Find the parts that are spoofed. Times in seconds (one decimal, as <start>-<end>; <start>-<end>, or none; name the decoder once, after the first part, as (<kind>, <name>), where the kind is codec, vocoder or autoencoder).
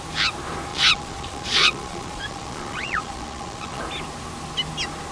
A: 0.7-3.8 (vocoder, Vocos)